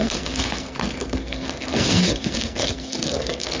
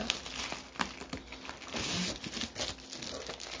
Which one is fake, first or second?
first